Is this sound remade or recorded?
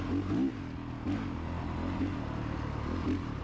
recorded